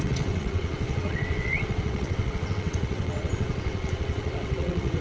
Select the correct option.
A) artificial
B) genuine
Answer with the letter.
A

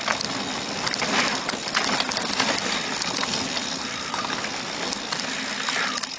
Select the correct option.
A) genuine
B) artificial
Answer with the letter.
A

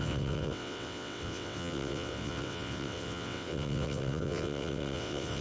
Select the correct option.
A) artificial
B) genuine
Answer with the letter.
A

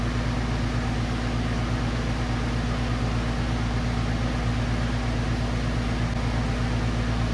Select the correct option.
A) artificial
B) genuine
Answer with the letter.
B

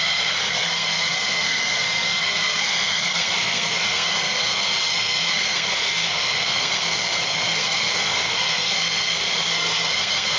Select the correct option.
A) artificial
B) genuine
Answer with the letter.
A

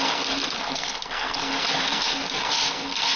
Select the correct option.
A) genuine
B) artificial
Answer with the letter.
B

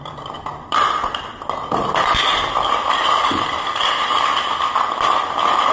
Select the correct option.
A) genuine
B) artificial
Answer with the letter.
A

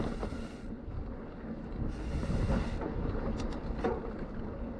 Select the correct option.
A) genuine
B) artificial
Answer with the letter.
A